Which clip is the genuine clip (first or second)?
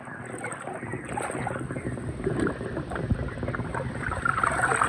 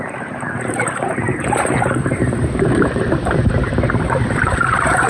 first